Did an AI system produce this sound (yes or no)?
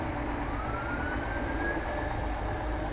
no